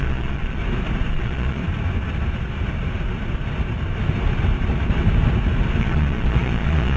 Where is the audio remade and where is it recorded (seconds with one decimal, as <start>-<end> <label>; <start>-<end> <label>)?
0.0-0.6 remade; 0.6-1.1 recorded; 1.1-1.6 remade; 1.6-5.8 recorded; 5.8-7.0 remade